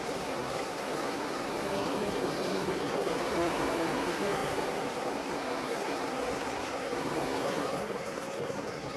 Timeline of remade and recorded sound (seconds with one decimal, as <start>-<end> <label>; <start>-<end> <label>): 0.0-9.0 remade

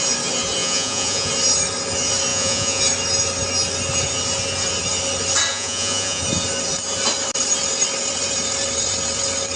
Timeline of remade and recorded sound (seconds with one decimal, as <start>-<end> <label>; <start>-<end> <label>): 0.0-0.6 recorded; 0.6-1.3 remade; 1.3-2.3 recorded; 2.3-2.8 remade; 2.8-5.5 recorded; 5.5-6.2 remade; 6.2-9.6 recorded

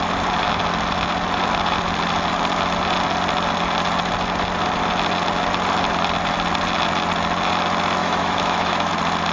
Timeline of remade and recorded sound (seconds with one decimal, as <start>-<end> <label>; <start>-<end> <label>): 0.0-8.0 recorded; 8.0-8.9 remade; 8.9-9.3 recorded

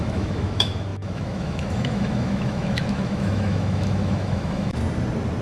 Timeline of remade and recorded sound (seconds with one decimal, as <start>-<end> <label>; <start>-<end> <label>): 0.0-4.8 remade; 4.8-5.4 recorded

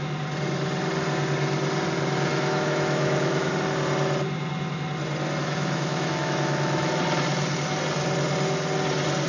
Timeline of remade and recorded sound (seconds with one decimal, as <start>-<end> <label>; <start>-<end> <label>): 0.0-2.3 recorded; 2.3-3.5 remade; 3.5-5.4 recorded; 5.4-7.0 remade; 7.0-9.3 recorded

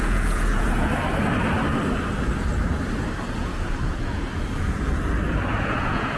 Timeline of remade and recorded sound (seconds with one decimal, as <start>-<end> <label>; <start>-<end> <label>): 0.0-0.9 remade; 0.9-3.3 recorded; 3.3-4.3 remade; 4.3-5.5 recorded; 5.5-6.2 remade

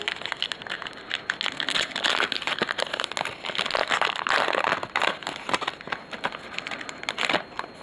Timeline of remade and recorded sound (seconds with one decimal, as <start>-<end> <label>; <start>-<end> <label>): 0.0-7.8 recorded

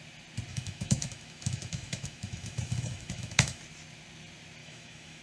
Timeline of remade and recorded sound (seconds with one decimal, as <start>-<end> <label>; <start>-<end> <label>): 0.0-0.5 recorded; 0.5-3.6 remade; 3.6-4.6 recorded; 4.6-5.2 remade